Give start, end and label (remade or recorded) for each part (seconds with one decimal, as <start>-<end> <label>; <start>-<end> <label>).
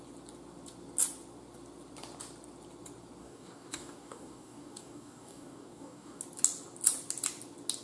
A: 0.0-3.2 recorded; 3.2-6.2 remade; 6.2-7.8 recorded